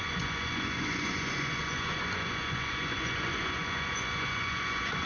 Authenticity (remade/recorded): remade